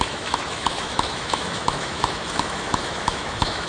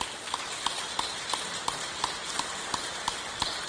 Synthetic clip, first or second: first